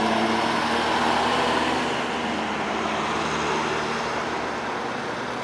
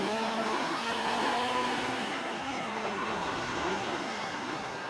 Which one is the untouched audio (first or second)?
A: first